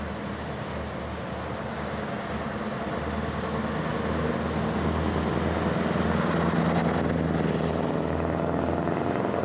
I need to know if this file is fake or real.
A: real